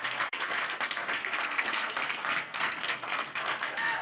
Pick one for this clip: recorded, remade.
remade